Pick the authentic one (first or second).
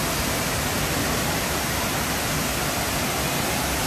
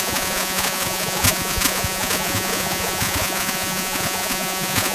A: first